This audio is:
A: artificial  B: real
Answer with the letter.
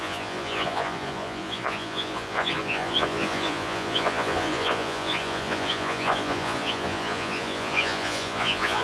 A